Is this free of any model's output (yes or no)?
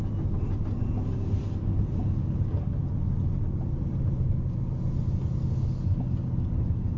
yes